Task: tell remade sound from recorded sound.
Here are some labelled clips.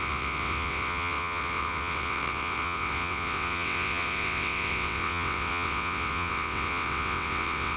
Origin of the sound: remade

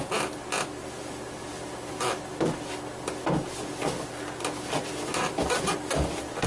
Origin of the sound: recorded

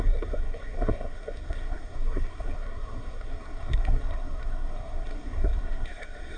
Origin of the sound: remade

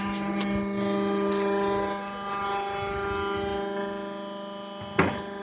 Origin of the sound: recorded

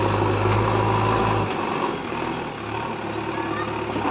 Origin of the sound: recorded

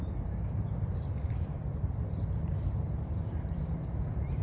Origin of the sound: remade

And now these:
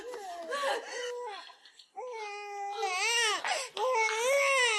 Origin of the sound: recorded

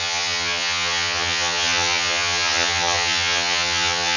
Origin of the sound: remade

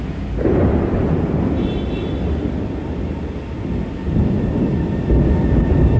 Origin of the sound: recorded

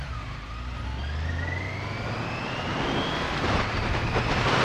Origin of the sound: recorded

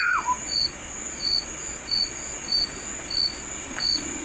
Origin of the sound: remade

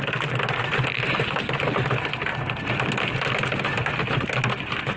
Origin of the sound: recorded